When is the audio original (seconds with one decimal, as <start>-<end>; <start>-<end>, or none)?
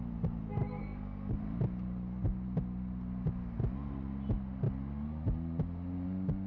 0.0-0.8; 1.4-6.5